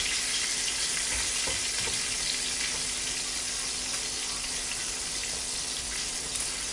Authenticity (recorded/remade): recorded